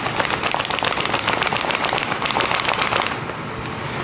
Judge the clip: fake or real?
real